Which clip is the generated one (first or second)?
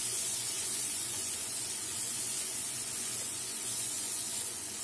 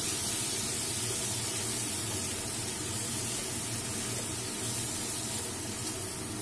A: first